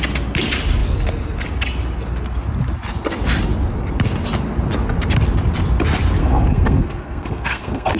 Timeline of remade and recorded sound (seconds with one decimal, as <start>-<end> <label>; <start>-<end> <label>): 0.0-6.2 recorded; 6.2-8.0 remade